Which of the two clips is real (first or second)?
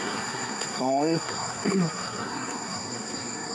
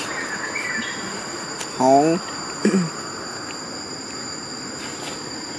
second